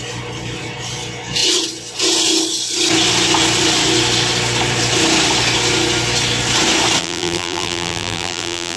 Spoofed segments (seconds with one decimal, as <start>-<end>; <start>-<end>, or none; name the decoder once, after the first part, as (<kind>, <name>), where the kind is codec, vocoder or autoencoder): 7.0-8.8 (vocoder, BigVGAN v2)